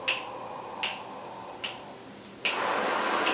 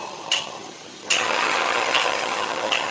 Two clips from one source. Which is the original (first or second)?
first